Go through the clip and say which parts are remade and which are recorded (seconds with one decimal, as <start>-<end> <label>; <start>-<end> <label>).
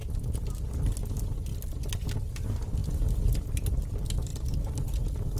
0.0-5.4 recorded